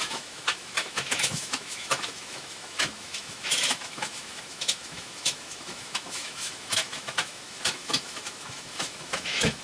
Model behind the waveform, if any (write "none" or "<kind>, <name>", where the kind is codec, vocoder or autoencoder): autoencoder, DAC-VAE